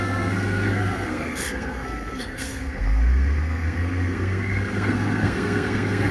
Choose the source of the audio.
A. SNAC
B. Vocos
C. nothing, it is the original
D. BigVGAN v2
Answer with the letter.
A